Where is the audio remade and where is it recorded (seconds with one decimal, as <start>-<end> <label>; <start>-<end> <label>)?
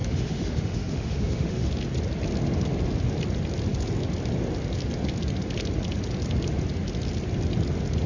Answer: 0.0-1.7 remade; 1.7-8.1 recorded